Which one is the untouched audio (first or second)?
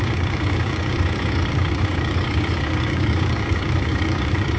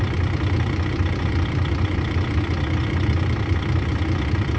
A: second